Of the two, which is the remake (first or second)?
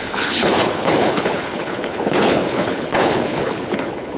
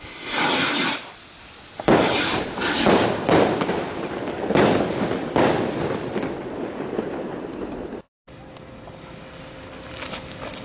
first